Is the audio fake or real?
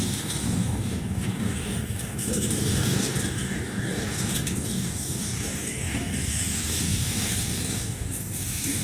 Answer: fake